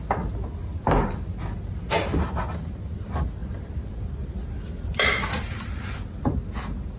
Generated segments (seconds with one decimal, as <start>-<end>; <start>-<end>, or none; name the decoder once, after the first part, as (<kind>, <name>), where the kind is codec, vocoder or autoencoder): none